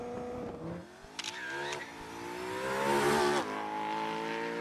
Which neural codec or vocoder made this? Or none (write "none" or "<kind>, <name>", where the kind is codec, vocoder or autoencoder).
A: none